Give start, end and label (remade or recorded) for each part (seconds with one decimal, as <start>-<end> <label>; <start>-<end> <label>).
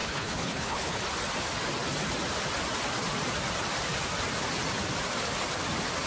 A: 0.0-1.0 remade; 1.0-6.1 recorded